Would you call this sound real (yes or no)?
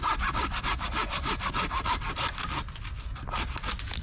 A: yes